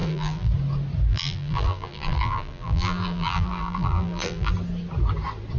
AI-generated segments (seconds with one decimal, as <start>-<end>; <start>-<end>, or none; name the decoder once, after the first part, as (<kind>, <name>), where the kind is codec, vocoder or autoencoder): 0.0-0.5 (vocoder, BigVGAN v2); 1.1-4.5